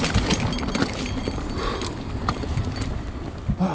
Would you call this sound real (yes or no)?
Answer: yes